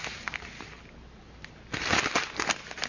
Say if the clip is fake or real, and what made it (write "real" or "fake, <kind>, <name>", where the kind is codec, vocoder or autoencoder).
real